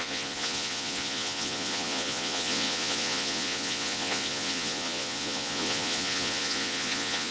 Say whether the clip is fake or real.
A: fake